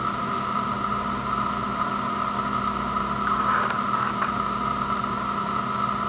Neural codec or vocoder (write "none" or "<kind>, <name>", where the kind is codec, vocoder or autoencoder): none